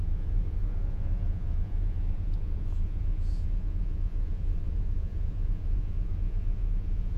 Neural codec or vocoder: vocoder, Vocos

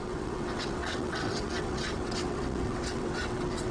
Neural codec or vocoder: vocoder, WaveNeXt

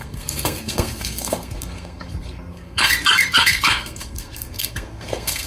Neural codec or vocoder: codec, SNAC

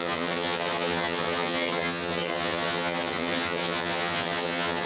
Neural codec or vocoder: vocoder, HiFi-GAN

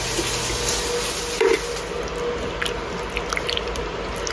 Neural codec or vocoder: none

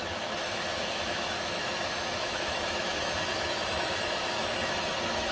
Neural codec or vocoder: autoencoder, DAC-VAE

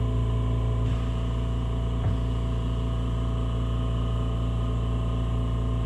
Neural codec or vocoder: none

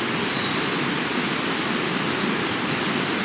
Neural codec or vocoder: none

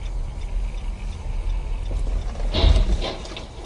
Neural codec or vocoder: none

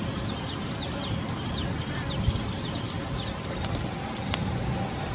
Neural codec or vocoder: none